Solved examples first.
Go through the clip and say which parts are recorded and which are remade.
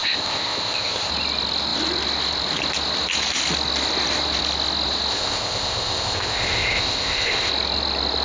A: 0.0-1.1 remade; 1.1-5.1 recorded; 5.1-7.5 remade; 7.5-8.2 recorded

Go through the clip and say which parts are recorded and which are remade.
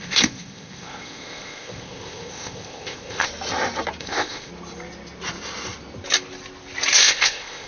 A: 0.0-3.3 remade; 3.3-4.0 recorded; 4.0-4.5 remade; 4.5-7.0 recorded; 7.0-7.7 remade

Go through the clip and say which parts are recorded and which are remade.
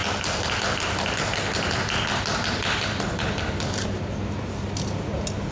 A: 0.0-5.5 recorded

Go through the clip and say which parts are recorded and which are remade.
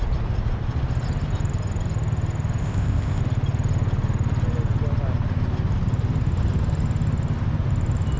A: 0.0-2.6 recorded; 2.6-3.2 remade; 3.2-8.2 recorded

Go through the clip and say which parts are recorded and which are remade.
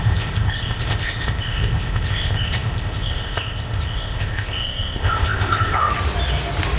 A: 0.0-5.9 remade; 5.9-6.8 recorded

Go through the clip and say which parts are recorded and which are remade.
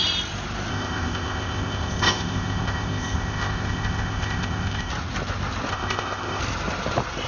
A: 0.0-0.7 recorded; 0.7-4.9 remade; 4.9-5.7 recorded; 5.7-6.4 remade; 6.4-7.3 recorded